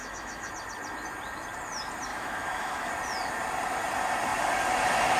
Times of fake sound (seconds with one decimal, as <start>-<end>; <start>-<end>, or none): 0.0-0.5; 2.1-2.9